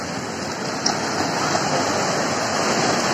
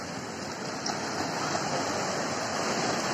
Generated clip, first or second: second